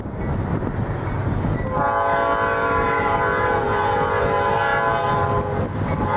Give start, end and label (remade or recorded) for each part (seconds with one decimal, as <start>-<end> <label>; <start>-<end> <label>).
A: 0.0-6.2 recorded